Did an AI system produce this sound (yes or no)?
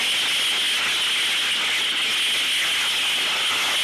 no